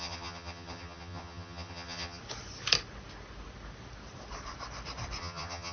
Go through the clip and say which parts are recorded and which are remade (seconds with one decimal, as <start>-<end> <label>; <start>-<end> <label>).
0.0-2.2 remade; 2.2-5.2 recorded; 5.2-5.7 remade

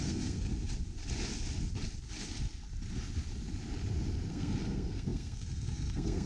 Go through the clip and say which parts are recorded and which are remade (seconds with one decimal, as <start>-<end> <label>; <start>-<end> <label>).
0.0-0.5 remade; 0.5-4.3 recorded; 4.3-6.3 remade

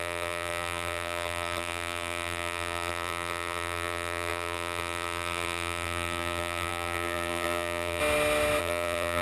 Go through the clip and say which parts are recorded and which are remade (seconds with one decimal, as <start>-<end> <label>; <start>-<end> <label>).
0.0-8.0 remade; 8.0-8.6 recorded; 8.6-9.2 remade

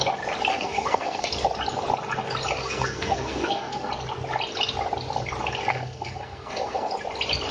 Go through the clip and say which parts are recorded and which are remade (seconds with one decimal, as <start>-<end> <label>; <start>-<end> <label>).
0.0-0.5 recorded; 0.5-1.3 remade; 1.3-2.6 recorded; 2.6-3.9 remade; 3.9-5.7 recorded; 5.7-6.9 remade; 6.9-7.5 recorded

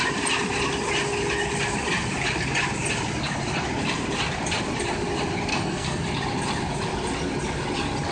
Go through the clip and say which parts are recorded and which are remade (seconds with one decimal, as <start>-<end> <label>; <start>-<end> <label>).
0.0-5.5 recorded; 5.5-6.0 remade; 6.0-8.1 recorded

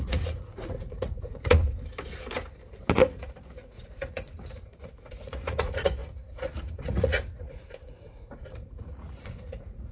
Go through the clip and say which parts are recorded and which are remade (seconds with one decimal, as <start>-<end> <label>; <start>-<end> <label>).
0.0-1.6 remade; 1.6-3.2 recorded; 3.2-6.0 remade; 6.0-6.7 recorded; 6.7-9.9 remade

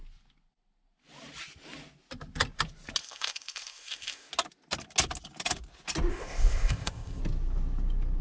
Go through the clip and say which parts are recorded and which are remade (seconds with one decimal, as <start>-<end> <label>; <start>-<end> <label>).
0.0-3.0 recorded; 3.0-4.3 remade; 4.3-6.1 recorded; 6.1-7.2 remade; 7.2-8.2 recorded

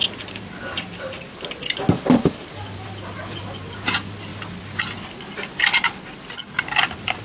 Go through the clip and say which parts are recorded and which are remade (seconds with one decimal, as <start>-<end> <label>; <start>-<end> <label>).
0.0-7.2 recorded